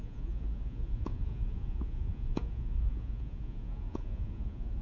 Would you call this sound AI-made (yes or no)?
yes